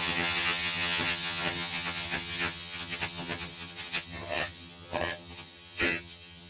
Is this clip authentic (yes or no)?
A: no